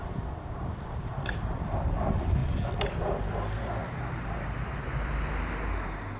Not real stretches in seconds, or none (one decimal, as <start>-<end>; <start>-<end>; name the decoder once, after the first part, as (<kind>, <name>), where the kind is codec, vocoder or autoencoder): 0.0-2.4 (vocoder, BigVGAN v2); 3.2-6.2